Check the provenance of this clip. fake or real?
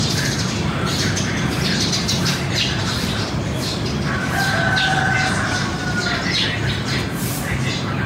real